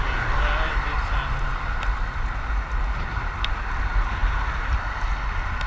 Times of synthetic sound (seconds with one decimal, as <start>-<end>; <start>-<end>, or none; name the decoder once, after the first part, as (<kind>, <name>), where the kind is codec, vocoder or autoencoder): none